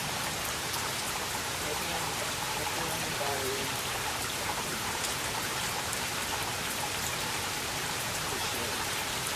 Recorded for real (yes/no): no